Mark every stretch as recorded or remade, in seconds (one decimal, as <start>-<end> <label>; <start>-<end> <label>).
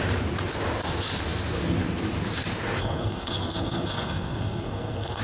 0.0-2.8 recorded; 2.8-5.2 remade